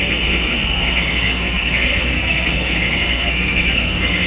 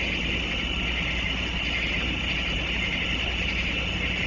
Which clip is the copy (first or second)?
first